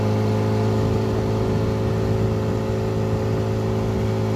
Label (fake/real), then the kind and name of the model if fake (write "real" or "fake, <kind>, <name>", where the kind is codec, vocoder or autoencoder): real